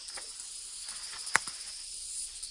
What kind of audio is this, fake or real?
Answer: real